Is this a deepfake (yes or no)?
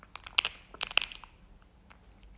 no